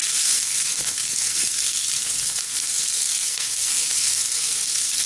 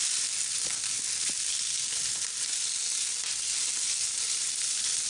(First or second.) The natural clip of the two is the second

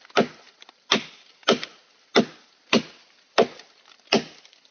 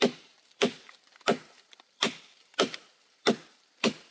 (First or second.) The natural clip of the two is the first